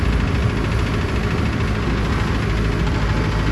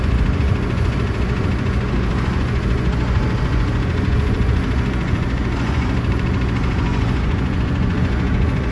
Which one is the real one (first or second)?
first